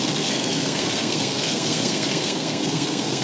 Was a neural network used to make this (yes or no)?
yes